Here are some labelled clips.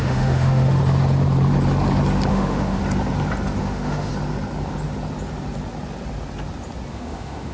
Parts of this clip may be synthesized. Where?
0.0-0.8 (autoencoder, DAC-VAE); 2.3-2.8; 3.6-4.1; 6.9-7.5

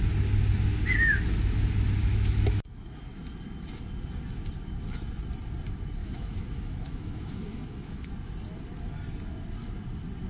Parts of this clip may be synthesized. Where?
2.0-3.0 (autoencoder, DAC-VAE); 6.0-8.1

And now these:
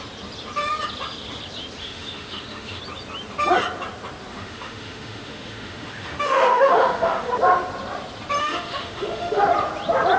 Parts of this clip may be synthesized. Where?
1.8-2.8 (autoencoder, DAC-VAE); 4.3-7.3; 8.4-9.4